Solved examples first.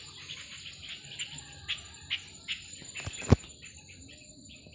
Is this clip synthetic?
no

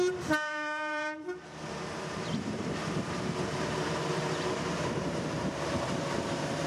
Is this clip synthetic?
yes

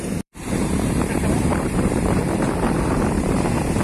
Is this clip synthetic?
yes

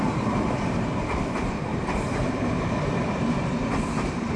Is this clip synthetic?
yes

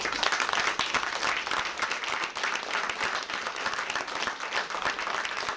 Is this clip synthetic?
no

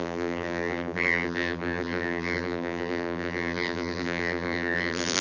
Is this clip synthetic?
yes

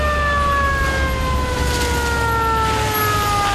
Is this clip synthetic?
no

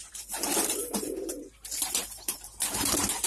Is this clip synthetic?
yes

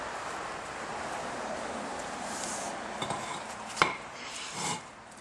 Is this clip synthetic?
yes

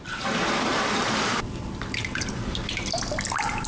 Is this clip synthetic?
yes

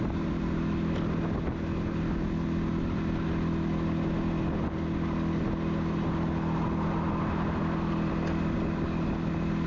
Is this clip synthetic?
no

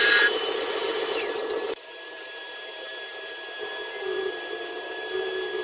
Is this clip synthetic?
yes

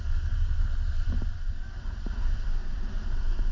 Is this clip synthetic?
no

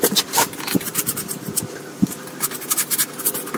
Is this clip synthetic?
no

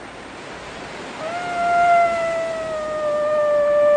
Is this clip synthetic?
no